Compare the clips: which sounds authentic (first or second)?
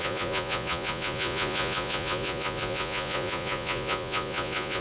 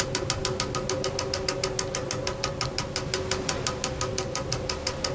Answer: second